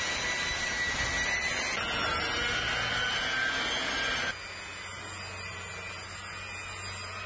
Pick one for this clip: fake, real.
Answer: real